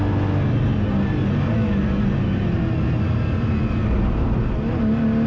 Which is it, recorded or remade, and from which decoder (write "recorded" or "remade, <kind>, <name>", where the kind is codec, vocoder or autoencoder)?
recorded